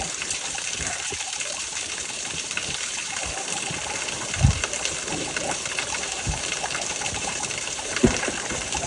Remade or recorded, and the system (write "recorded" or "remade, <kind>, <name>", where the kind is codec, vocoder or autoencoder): remade, vocoder, BigVGAN v2